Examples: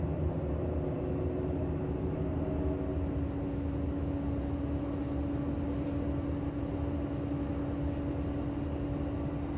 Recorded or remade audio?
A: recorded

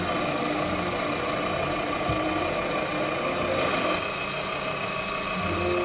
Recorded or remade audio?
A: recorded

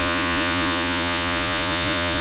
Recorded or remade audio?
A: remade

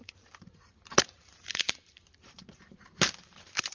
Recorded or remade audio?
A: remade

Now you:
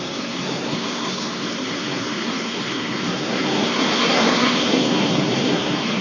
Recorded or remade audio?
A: remade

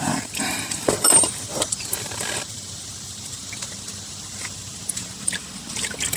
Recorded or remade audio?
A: remade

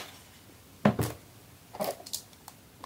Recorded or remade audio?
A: recorded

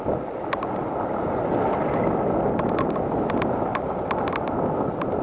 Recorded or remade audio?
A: recorded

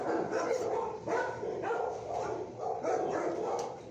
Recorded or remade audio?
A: recorded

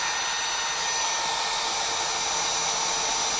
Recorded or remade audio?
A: recorded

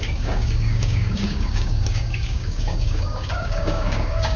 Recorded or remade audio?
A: remade